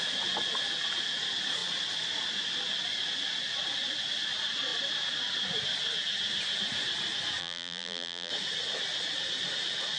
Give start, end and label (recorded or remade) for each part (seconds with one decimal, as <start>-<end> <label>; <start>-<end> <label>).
0.0-7.4 recorded; 7.4-8.3 remade; 8.3-10.0 recorded

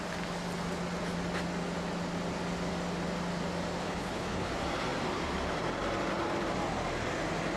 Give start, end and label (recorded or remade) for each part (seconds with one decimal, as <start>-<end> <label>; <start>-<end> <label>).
0.0-3.8 recorded; 3.8-4.5 remade; 4.5-7.6 recorded

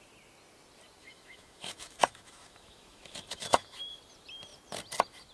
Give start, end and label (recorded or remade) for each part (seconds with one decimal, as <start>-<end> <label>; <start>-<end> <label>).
0.0-1.0 recorded; 1.0-4.0 remade; 4.0-5.3 recorded

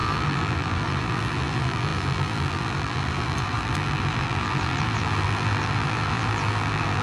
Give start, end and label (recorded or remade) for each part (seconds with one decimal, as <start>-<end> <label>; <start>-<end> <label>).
0.0-7.0 remade

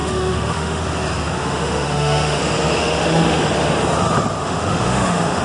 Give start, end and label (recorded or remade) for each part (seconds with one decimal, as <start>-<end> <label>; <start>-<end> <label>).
0.0-0.8 remade; 0.8-1.4 recorded; 1.4-2.4 remade; 2.4-2.8 recorded; 2.8-3.4 remade; 3.4-4.4 recorded; 4.4-5.4 remade

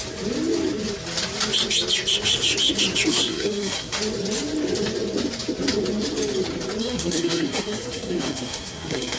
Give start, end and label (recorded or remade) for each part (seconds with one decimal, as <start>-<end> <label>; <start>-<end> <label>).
0.0-3.1 recorded; 3.1-4.0 remade; 4.0-6.8 recorded; 6.8-9.2 remade

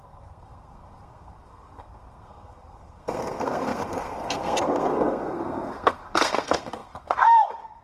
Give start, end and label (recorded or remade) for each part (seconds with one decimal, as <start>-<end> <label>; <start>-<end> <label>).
0.0-7.8 remade